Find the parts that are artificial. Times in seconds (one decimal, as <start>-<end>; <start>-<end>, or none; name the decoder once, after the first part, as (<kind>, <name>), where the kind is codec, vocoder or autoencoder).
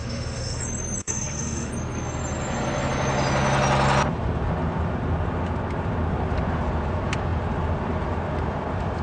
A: 0.0-0.6 (autoencoder, DAC-VAE); 1.0-1.7